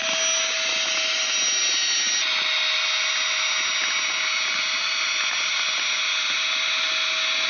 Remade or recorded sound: recorded